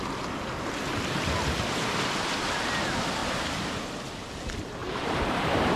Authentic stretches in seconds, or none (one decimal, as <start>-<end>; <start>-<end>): 0.0-3.2; 3.8-4.8